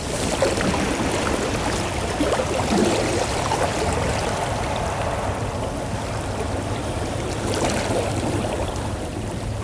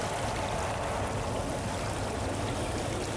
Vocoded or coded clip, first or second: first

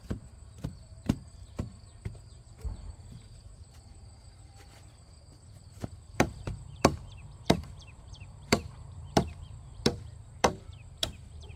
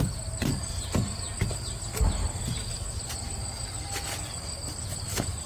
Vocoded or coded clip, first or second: first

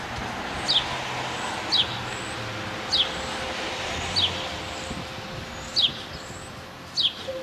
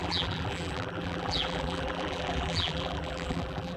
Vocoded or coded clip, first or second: second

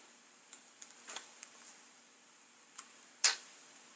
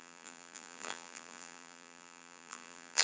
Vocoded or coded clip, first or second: second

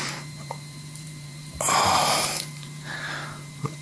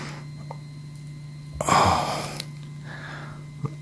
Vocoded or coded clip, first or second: first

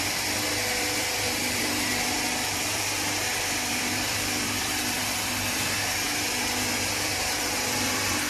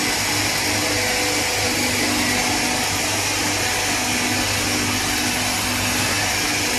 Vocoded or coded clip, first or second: first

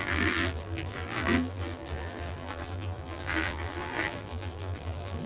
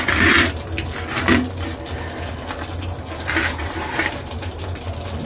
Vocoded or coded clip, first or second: first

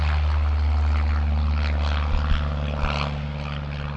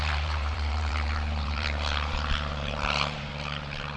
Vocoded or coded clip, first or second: second